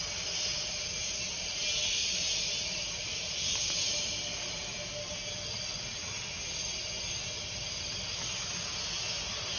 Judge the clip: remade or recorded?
recorded